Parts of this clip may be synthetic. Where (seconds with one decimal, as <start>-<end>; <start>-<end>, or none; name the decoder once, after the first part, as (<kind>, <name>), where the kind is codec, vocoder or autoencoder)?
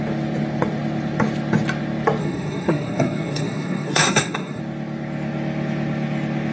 2.2-4.6 (codec, SNAC)